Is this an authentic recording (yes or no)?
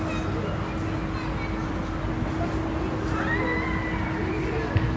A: yes